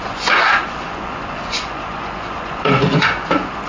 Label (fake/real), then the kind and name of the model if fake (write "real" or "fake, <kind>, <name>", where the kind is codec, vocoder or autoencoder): fake, vocoder, Vocos